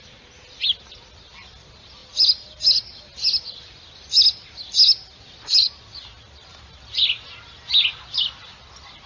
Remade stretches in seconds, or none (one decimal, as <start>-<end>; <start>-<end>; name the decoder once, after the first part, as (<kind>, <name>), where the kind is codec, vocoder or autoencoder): 2.0-2.6 (vocoder, BigVGAN v2); 6.5-7.3